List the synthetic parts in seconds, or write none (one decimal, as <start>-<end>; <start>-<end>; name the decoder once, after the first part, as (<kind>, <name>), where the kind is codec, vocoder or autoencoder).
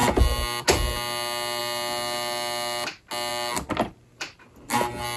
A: none